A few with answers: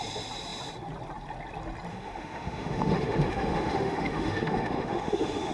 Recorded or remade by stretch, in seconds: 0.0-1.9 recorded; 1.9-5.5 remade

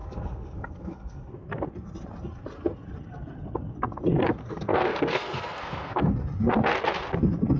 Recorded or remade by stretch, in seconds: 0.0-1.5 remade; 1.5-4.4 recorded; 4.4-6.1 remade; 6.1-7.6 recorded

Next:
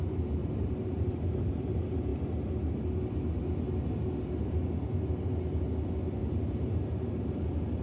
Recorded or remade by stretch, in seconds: 0.0-0.4 recorded; 0.4-1.7 remade; 1.7-6.2 recorded; 6.2-7.8 remade

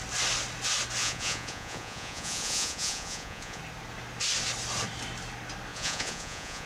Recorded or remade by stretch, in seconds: 0.0-1.0 recorded; 1.0-3.6 remade; 3.6-5.7 recorded; 5.7-6.7 remade

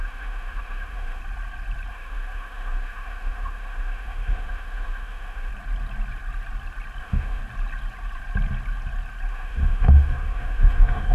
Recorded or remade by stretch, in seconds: 0.0-1.2 remade; 1.2-1.9 recorded; 1.9-5.5 remade; 5.5-7.0 recorded; 7.0-7.4 remade; 7.4-9.3 recorded; 9.3-11.1 remade

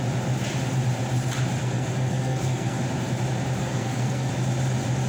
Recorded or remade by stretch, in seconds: 0.0-1.6 recorded; 1.6-2.8 remade; 2.8-3.6 recorded; 3.6-4.3 remade; 4.3-5.1 recorded